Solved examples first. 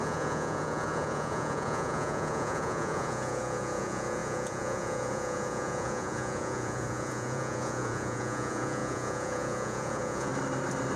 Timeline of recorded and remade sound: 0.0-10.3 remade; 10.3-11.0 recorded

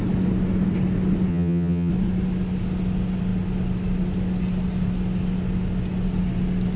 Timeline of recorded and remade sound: 0.0-1.3 recorded; 1.3-1.9 remade; 1.9-6.8 recorded